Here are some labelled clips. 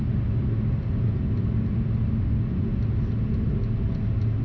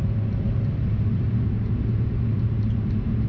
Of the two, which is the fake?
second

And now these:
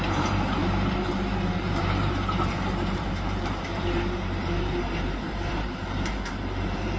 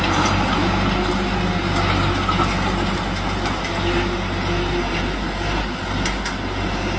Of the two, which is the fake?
first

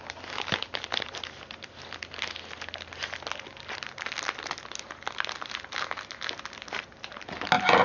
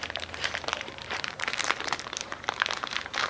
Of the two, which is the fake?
second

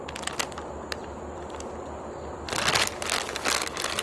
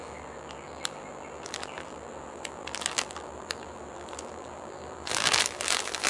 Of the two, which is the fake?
second